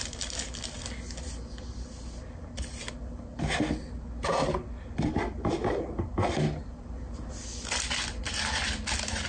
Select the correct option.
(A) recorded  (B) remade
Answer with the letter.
A